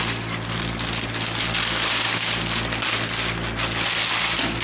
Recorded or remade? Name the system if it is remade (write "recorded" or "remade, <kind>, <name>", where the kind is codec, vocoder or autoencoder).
recorded